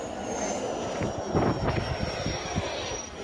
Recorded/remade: recorded